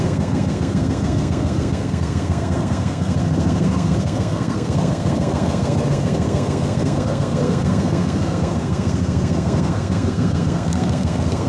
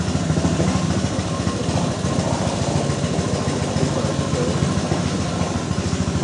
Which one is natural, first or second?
second